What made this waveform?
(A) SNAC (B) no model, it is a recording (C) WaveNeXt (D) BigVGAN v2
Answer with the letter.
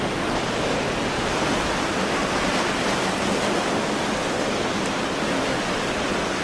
B